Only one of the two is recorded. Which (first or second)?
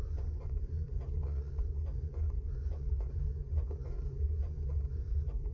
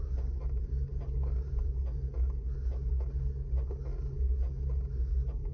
second